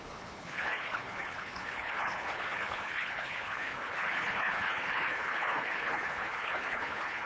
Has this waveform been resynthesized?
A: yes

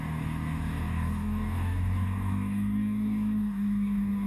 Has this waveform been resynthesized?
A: yes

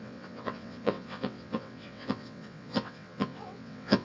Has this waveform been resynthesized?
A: yes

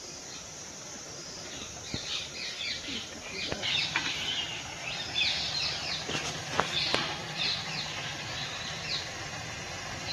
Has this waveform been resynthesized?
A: yes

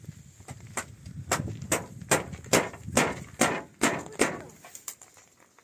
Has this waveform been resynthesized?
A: no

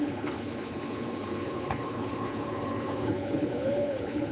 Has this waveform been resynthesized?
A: yes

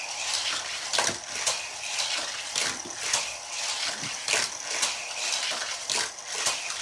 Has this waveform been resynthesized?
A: no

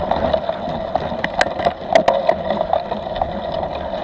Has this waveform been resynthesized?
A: no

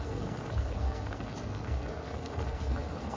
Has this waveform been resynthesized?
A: yes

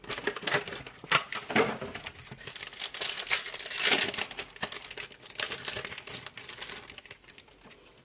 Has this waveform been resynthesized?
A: no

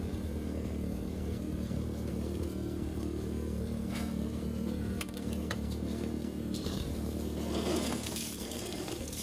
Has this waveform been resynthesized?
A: yes